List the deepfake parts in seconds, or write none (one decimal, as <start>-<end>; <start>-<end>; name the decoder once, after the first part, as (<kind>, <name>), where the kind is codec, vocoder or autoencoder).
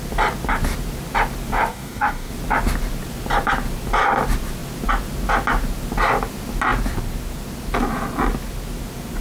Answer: 1.7-2.3 (codec, DAC)